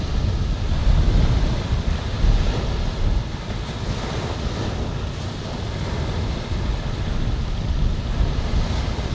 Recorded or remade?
recorded